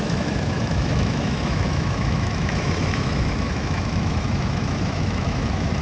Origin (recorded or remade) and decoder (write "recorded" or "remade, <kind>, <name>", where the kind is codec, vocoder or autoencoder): remade, autoencoder, DAC-VAE